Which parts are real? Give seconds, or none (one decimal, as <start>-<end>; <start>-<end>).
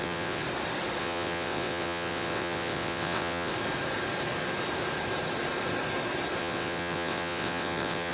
0.4-1.0; 3.5-6.4